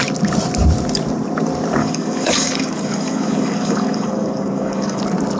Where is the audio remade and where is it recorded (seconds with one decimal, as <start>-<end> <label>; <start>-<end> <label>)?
0.0-1.8 recorded; 1.8-5.0 remade; 5.0-5.4 recorded